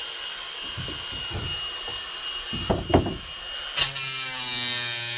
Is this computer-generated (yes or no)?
no